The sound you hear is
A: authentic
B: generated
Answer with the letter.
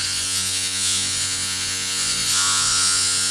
B